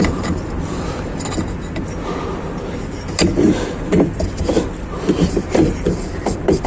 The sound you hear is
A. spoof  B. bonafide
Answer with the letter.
B